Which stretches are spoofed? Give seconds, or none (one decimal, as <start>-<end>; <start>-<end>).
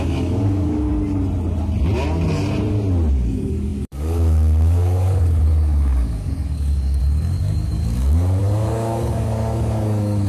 0.0-0.9; 3.1-10.3